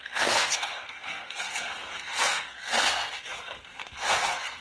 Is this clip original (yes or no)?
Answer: no